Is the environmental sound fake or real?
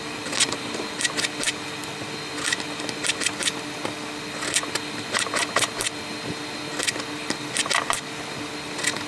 real